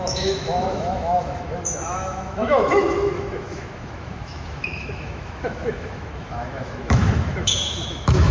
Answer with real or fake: fake